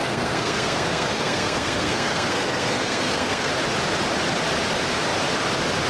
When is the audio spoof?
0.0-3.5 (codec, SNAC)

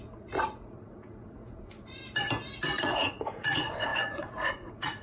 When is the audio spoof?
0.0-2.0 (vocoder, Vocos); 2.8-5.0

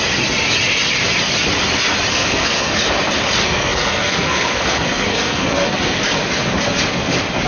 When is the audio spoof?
2.1-2.7 (codec, SNAC); 3.4-6.0

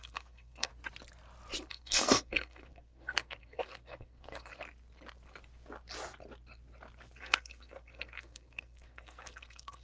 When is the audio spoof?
0.0-0.7 (codec, SNAC); 1.7-4.5; 7.2-9.8

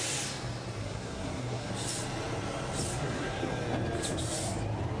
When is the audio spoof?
0.8-1.7 (codec, SNAC); 2.9-3.4

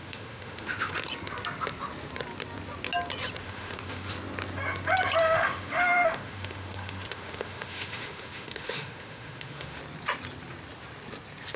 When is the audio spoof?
0.0-0.9 (autoencoder, DAC-VAE); 3.4-4.1; 5.2-9.8